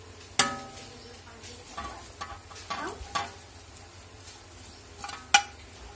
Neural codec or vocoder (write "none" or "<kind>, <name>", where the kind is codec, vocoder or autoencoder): none